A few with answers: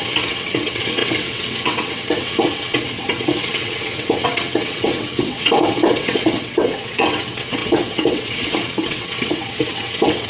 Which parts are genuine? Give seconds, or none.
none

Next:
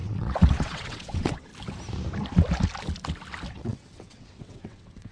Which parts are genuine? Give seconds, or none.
1.5-3.5

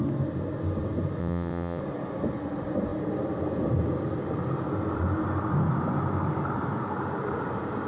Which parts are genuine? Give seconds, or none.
0.0-1.2; 1.8-7.9

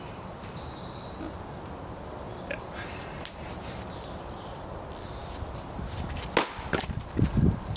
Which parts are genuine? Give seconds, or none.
0.0-7.8

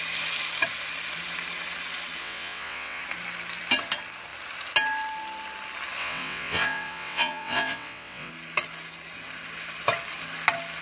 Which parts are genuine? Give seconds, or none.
0.0-2.2; 3.0-6.0; 8.3-10.8

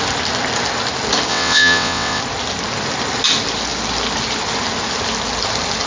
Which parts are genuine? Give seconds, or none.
0.0-1.3; 2.2-5.9